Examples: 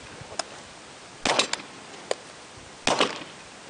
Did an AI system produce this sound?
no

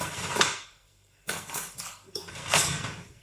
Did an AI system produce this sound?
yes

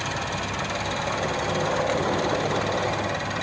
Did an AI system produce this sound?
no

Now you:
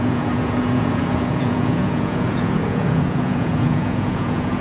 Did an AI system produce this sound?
yes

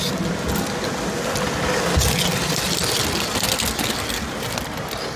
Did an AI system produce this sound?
no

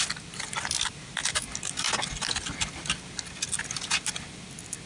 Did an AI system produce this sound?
no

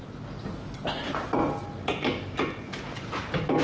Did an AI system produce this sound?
no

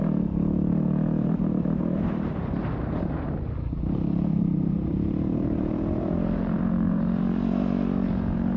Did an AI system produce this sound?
yes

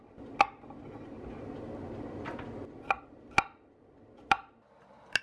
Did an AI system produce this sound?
no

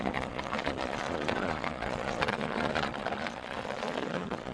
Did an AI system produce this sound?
yes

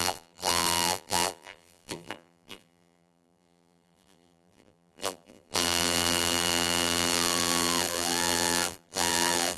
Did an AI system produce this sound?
yes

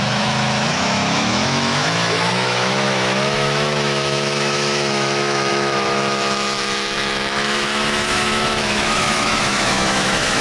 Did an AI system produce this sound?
yes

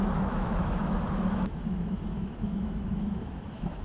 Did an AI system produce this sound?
yes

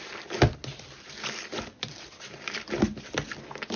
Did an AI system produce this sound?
no